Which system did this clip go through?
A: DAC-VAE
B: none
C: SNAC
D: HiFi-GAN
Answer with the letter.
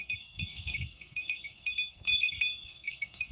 C